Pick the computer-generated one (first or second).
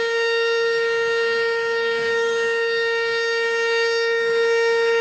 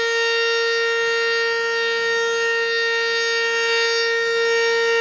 first